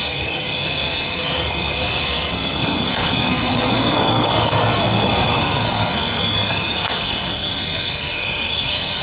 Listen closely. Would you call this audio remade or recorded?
remade